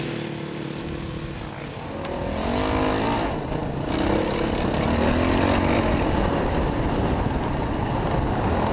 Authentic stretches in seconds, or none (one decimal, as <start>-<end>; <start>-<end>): 0.0-8.7

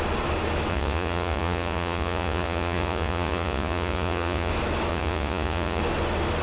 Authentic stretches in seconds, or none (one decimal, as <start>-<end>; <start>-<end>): 0.0-0.7; 4.5-4.9; 5.8-6.4

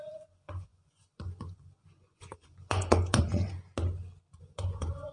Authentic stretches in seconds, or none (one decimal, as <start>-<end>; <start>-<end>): 3.7-4.4

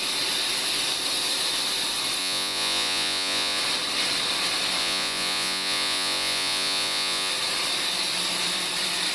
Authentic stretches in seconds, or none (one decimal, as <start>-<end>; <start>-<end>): 0.0-2.2; 3.6-4.8; 7.3-9.1

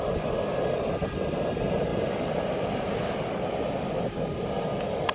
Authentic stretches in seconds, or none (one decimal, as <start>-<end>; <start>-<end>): 0.0-5.1

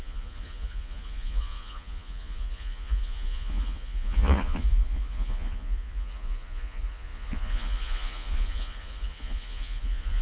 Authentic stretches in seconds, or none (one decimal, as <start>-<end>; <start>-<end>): none

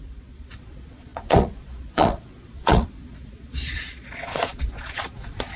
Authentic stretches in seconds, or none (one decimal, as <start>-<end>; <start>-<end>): none

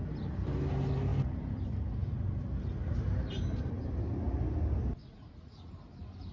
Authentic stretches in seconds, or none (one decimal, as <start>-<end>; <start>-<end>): 0.0-5.0; 5.7-6.3